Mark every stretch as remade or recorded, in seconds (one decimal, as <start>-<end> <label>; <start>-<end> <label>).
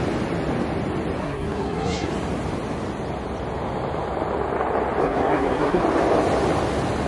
0.0-1.2 recorded; 1.2-2.1 remade; 2.1-5.0 recorded; 5.0-5.8 remade; 5.8-7.1 recorded